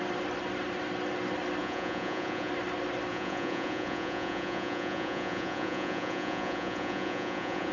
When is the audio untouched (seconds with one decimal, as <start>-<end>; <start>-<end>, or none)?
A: 0.0-1.6; 2.5-3.1